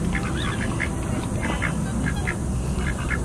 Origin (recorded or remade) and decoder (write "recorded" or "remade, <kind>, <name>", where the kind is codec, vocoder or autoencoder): recorded